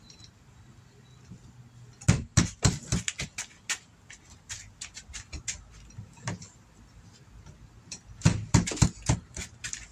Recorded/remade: recorded